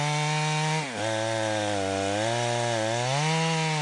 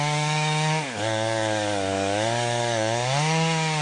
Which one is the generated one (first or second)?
second